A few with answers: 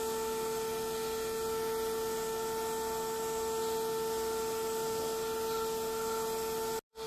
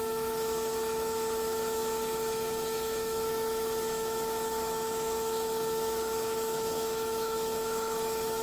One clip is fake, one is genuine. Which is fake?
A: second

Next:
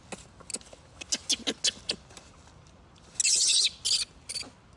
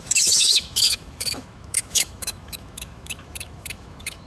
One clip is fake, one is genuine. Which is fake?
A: second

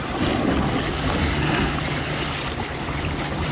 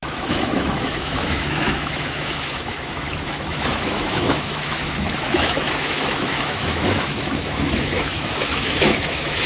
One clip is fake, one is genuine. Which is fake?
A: second